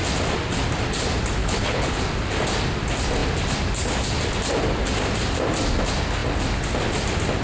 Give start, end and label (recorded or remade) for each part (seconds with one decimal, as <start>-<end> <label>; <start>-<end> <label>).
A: 0.0-1.4 recorded; 1.4-2.0 remade; 2.0-7.4 recorded